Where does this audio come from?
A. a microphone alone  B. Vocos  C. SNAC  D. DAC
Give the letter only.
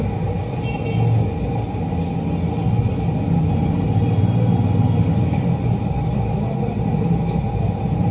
A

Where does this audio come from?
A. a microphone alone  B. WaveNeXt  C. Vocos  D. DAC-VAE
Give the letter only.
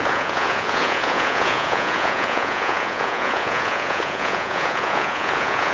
C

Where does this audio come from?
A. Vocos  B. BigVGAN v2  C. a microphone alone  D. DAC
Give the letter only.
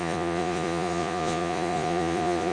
A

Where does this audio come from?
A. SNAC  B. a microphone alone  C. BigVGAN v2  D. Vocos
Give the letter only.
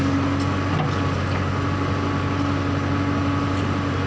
B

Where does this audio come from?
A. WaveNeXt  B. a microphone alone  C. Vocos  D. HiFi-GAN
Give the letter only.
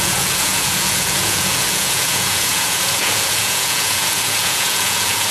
C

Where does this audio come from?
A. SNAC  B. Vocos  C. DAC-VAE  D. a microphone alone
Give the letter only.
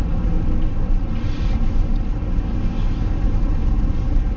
D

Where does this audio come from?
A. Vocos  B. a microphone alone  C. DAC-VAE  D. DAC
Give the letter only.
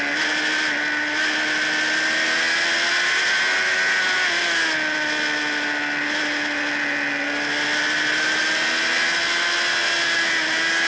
B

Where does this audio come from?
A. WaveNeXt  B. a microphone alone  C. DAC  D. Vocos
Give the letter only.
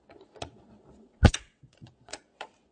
D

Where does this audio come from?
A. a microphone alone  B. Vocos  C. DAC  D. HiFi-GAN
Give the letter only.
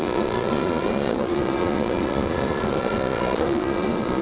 B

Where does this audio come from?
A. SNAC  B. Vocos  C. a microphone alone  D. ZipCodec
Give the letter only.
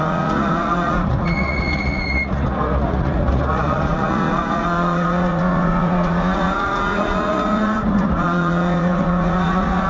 B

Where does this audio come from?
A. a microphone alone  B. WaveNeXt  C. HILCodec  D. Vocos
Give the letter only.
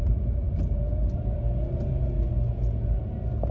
A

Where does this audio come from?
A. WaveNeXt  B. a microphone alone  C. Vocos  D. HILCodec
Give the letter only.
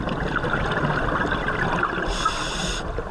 B